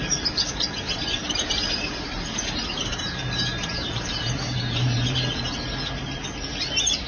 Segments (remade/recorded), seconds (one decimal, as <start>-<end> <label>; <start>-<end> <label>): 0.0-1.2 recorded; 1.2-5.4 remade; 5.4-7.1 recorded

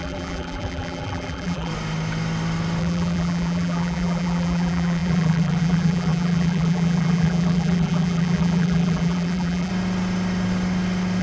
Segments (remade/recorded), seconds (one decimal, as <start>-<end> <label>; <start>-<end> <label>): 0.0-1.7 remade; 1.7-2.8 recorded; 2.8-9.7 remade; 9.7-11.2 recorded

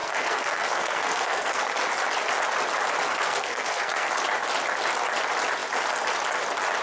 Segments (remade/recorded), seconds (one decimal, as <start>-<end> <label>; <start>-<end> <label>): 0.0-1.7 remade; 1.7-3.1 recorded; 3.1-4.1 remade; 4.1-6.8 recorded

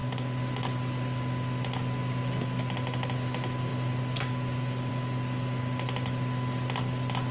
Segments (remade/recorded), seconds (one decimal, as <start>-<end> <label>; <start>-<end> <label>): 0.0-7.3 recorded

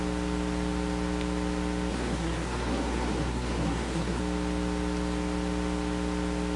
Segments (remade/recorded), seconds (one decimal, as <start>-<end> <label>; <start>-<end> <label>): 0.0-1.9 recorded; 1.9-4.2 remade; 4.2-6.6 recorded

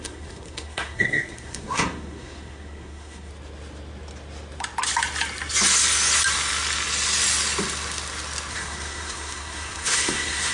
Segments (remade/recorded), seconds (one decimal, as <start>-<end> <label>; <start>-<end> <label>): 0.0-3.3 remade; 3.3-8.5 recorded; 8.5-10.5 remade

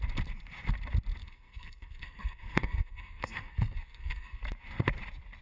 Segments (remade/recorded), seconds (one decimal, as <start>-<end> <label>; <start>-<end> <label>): 0.0-1.2 recorded; 1.2-4.4 remade; 4.4-5.4 recorded

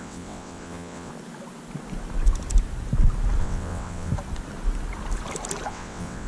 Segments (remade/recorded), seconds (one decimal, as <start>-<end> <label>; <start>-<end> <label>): 0.0-1.1 remade; 1.1-3.4 recorded; 3.4-4.1 remade; 4.1-5.7 recorded; 5.7-6.3 remade